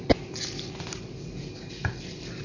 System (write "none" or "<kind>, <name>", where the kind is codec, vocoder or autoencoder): none